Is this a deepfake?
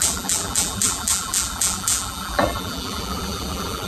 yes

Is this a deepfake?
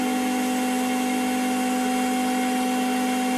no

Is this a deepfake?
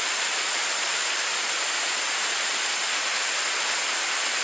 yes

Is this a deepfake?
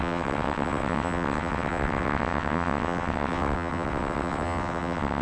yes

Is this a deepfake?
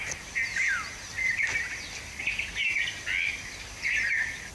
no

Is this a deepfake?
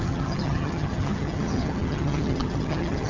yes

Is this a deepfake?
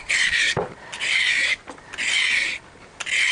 no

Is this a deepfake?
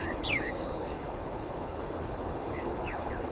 yes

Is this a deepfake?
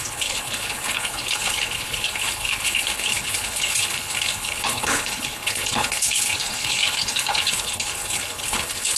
yes